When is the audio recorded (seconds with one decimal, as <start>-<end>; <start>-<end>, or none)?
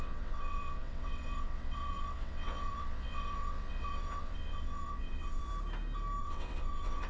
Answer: 5.5-6.2